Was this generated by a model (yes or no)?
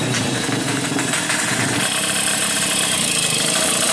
yes